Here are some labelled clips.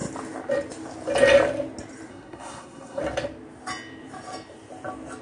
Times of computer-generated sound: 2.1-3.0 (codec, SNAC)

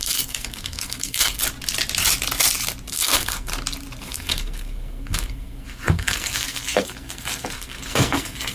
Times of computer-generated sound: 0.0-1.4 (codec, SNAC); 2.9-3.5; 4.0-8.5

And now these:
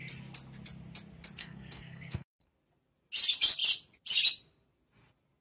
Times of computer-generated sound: 1.4-2.5 (codec, SNAC)

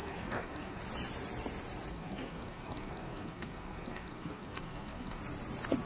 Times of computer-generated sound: 0.0-0.8 (codec, SNAC); 1.9-5.2

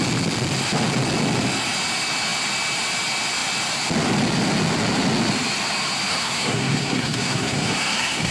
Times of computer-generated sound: 6.1-8.3 (codec, SNAC)

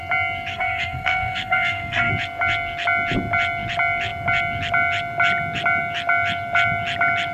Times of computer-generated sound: 0.5-2.1 (codec, SNAC)

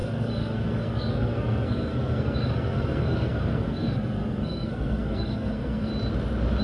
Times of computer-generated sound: 0.0-5.9 (codec, SNAC)

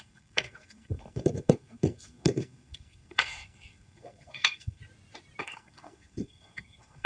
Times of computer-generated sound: 0.0-4.8 (codec, SNAC); 5.4-7.1